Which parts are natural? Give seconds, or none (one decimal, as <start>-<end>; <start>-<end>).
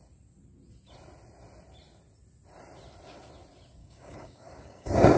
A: 0.0-3.8